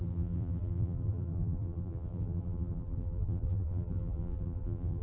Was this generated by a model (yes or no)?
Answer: yes